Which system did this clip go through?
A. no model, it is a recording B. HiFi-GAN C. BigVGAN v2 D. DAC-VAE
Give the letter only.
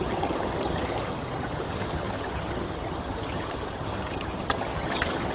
B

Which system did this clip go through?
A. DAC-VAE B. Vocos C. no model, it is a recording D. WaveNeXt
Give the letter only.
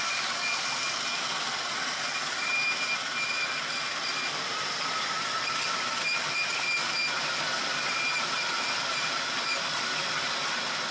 C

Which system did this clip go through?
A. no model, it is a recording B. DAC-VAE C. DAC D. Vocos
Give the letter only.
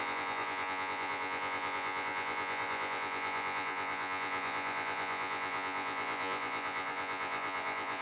D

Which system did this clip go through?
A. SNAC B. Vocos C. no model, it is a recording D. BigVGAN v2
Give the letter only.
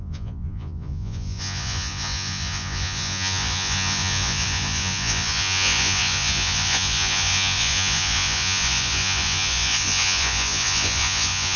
B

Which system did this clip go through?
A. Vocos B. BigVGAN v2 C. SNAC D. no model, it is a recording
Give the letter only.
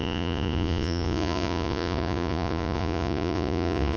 A